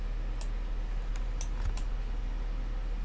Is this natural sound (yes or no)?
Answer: yes